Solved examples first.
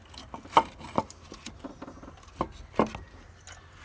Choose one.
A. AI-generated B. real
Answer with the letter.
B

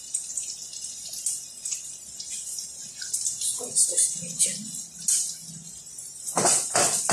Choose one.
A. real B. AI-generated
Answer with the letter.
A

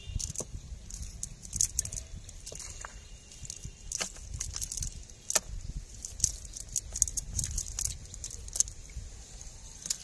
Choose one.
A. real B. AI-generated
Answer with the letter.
A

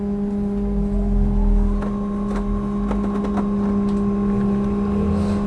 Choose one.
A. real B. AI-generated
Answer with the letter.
A